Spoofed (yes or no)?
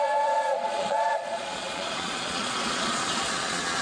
yes